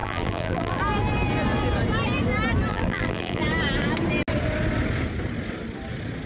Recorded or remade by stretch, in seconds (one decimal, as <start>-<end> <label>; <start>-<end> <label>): 0.0-0.8 remade; 0.8-2.7 recorded; 2.7-3.4 remade; 3.4-6.3 recorded